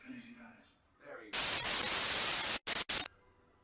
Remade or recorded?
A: recorded